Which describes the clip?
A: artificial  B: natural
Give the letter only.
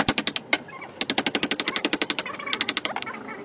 B